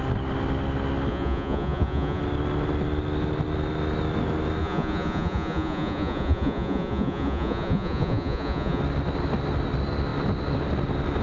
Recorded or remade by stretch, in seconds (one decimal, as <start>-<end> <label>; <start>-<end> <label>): 0.0-1.1 recorded; 1.1-2.2 remade; 2.2-4.6 recorded; 4.6-8.8 remade; 8.8-11.2 recorded